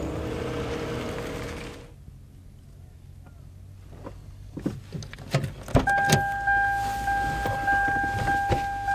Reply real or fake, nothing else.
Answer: real